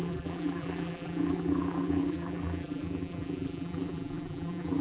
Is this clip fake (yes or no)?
yes